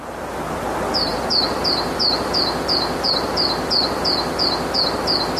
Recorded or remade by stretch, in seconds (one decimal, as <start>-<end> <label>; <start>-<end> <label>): 0.0-5.4 recorded